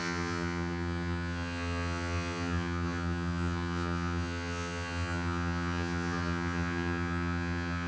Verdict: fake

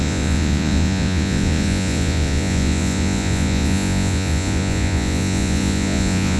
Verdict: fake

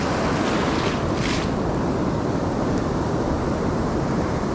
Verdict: real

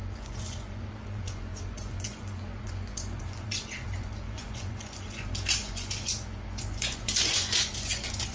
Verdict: fake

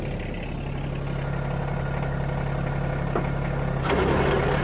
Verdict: real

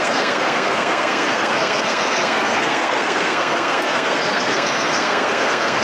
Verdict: fake